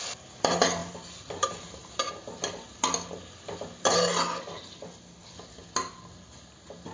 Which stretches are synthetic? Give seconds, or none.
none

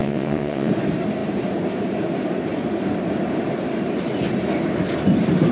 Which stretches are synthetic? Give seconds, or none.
0.0-0.7 (vocoder, WaveNeXt)

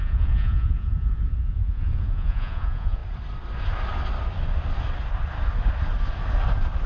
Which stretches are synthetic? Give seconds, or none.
0.0-3.0 (vocoder, Vocos)

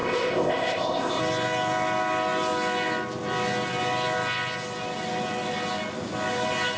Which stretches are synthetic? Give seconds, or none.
0.0-1.2 (codec, ZipCodec)

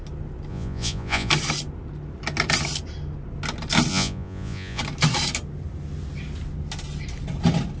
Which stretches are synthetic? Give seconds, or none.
0.5-1.3 (vocoder, Vocos); 3.9-4.8

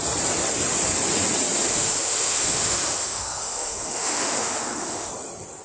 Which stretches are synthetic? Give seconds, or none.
1.7-5.1 (autoencoder, DAC-VAE)

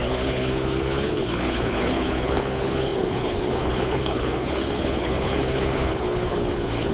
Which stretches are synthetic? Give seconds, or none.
0.0-6.9 (codec, HILCodec)

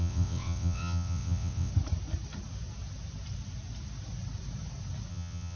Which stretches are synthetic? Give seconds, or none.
0.0-1.7 (vocoder, WaveNeXt); 5.1-5.6